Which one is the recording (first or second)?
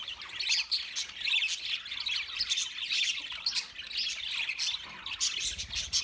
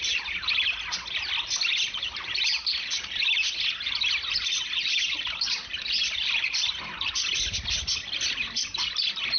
first